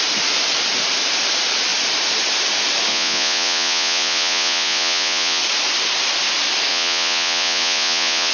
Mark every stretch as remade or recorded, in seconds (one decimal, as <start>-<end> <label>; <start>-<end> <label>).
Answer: 0.0-2.9 recorded; 2.9-5.4 remade; 5.4-6.7 recorded; 6.7-8.3 remade